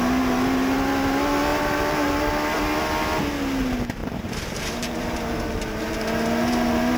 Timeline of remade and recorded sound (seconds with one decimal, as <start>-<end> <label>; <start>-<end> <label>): 0.0-1.5 recorded; 1.5-2.3 remade; 2.3-4.0 recorded; 4.0-5.9 remade; 5.9-7.0 recorded